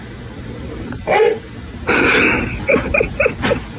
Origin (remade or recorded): recorded